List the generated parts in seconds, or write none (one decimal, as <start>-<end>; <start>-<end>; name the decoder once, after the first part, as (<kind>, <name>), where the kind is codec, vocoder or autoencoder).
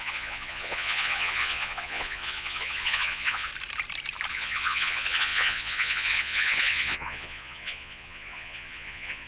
0.0-3.5 (vocoder, Vocos); 4.3-9.3